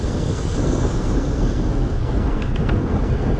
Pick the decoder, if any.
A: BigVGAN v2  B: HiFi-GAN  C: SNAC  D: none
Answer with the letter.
C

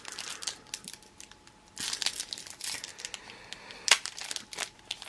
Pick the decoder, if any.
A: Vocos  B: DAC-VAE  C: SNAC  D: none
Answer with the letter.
D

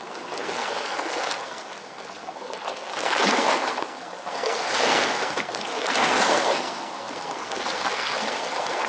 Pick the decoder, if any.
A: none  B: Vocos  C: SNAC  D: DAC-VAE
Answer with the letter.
C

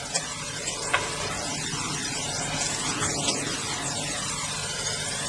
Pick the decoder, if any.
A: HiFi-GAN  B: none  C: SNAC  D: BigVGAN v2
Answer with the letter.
B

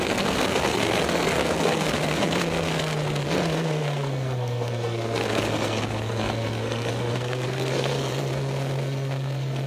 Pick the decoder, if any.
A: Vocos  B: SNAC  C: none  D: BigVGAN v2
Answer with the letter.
B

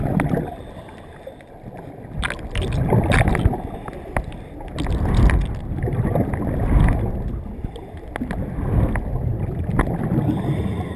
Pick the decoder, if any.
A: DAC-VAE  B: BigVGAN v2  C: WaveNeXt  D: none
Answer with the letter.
D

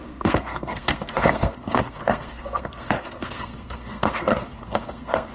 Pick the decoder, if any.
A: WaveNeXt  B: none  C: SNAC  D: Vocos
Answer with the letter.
C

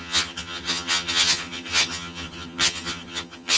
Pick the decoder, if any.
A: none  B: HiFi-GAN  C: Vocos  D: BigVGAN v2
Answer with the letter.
B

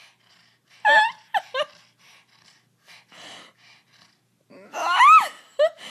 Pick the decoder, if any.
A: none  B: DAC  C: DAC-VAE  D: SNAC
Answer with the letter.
A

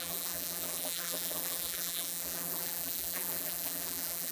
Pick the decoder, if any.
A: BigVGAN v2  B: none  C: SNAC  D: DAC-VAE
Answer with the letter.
A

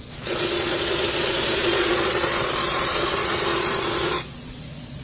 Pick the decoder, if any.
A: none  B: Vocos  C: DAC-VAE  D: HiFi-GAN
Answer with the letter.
B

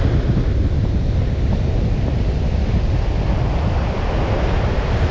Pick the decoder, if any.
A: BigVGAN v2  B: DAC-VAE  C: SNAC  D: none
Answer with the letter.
D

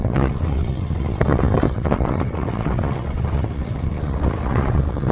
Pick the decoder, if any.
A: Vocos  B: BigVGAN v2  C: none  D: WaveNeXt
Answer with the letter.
D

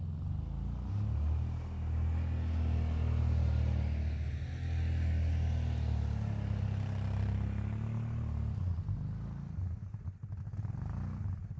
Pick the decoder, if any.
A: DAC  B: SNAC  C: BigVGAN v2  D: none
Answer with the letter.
D